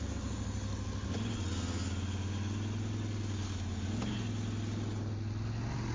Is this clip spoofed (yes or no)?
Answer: no